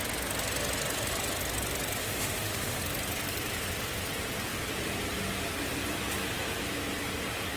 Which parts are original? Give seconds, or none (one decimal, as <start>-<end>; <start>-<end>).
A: 0.0-2.0; 2.8-7.6